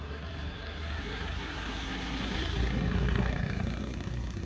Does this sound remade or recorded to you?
remade